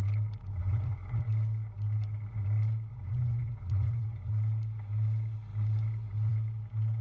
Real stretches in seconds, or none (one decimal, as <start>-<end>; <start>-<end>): 0.0-0.6; 1.2-2.9; 4.3-7.0